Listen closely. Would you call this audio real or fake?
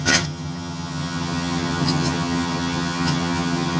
fake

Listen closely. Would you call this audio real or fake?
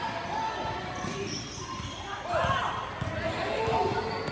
real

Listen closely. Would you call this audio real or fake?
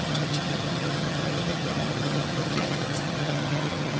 fake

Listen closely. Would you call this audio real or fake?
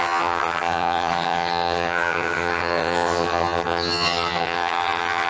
fake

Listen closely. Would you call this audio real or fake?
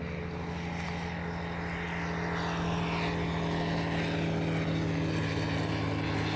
real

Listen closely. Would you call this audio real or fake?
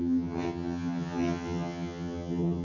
fake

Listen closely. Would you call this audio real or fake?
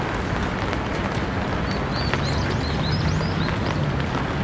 real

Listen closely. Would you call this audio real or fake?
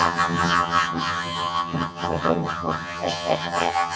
fake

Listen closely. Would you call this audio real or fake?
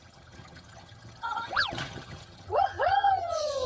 fake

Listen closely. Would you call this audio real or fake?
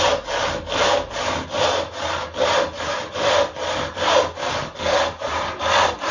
real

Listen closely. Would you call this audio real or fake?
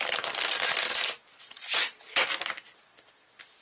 real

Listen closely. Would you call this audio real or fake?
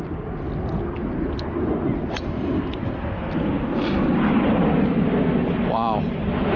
real